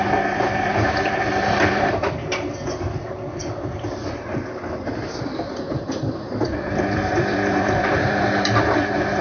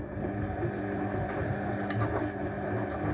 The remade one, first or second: first